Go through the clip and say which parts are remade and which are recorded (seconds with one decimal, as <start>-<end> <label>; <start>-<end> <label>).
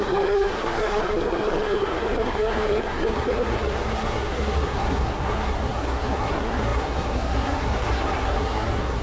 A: 0.0-9.0 remade